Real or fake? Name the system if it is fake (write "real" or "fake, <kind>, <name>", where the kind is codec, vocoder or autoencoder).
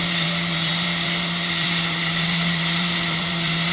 fake, vocoder, BigVGAN v2